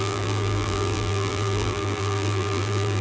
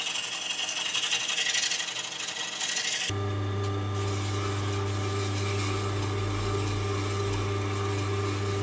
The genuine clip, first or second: second